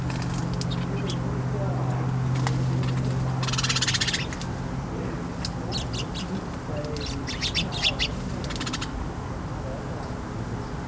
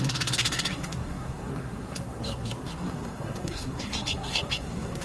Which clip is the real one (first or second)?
first